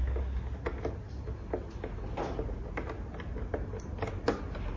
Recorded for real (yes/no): yes